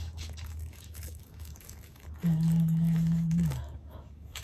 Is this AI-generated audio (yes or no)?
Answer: yes